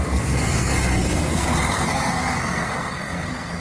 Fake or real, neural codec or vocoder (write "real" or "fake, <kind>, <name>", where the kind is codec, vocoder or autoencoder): fake, codec, SNAC